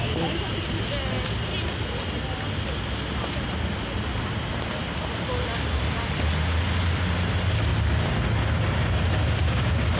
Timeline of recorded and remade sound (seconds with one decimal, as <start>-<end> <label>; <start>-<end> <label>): 0.0-10.0 recorded